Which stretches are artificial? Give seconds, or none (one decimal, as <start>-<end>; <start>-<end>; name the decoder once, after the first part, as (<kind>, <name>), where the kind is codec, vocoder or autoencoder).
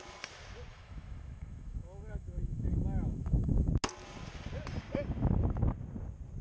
0.7-3.7 (autoencoder, DAC-VAE)